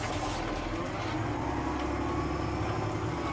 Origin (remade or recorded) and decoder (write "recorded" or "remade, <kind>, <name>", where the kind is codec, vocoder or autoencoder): recorded